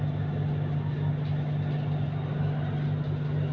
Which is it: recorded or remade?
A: recorded